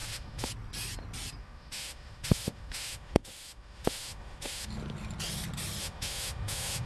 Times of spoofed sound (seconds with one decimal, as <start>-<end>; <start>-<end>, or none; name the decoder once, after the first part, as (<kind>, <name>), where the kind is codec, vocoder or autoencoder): 0.0-0.5 (autoencoder, DAC-VAE); 1.4-4.7; 5.8-6.9